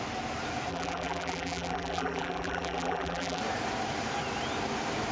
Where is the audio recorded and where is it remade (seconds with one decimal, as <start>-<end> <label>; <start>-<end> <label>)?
0.0-0.7 recorded; 0.7-3.4 remade; 3.4-5.1 recorded